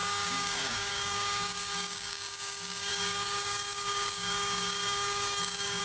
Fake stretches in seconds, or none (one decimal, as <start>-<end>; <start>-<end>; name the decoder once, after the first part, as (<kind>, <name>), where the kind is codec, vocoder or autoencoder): 0.0-5.8 (codec, DAC)